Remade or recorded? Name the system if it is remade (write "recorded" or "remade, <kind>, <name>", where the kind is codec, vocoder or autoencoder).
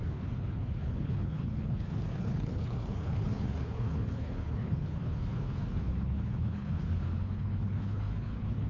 remade, codec, HILCodec